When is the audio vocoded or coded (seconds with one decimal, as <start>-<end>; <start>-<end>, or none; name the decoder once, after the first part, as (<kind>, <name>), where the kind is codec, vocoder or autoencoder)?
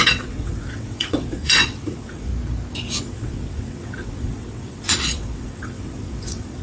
0.0-2.3 (vocoder, WaveNeXt); 3.0-6.6